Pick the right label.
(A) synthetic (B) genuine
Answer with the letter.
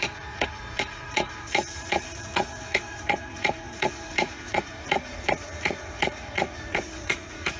A